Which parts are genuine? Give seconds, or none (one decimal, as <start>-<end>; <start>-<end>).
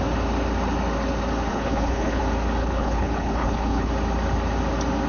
0.0-1.5; 2.2-2.6; 3.9-5.1